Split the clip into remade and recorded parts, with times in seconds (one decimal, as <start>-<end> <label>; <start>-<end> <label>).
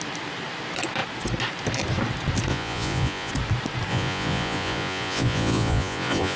0.0-2.5 recorded; 2.5-3.3 remade; 3.3-3.9 recorded; 3.9-6.4 remade